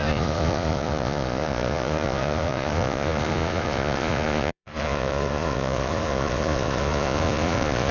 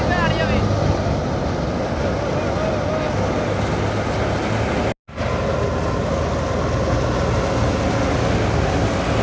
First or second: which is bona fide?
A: second